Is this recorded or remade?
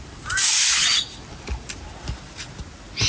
recorded